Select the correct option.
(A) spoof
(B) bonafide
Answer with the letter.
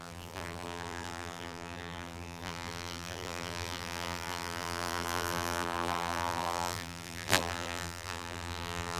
A